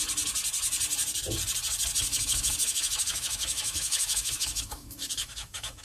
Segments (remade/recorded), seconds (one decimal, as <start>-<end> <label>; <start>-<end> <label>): 0.0-2.1 recorded; 2.1-5.8 remade